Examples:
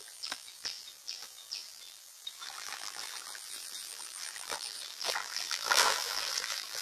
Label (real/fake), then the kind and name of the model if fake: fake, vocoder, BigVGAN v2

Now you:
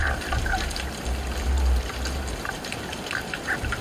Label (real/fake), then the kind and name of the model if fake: real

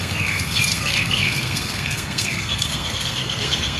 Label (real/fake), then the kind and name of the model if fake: fake, codec, SNAC